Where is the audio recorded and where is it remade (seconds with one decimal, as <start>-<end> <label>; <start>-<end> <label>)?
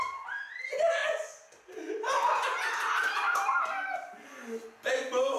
0.0-5.4 recorded